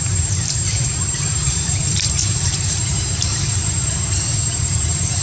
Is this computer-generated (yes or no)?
yes